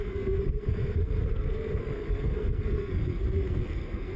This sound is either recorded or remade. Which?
remade